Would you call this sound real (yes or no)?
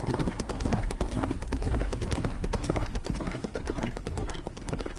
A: no